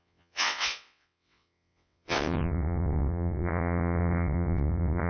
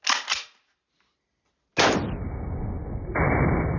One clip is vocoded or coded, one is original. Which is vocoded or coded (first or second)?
first